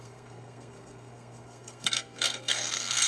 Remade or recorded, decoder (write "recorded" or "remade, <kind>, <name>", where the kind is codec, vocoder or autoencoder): remade, codec, SNAC